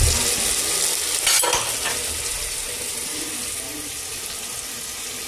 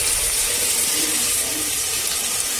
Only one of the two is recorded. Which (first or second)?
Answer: first